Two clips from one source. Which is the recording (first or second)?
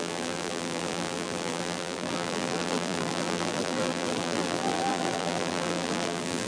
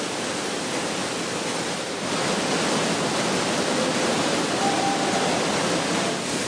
second